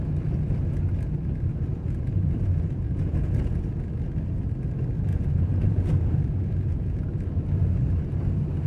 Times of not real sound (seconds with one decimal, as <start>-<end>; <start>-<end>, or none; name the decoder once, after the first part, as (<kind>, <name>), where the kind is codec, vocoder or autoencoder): 1.7-3.6 (vocoder, Vocos); 5.1-7.0